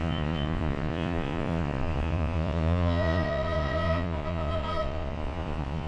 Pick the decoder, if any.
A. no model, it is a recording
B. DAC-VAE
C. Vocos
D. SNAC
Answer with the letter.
C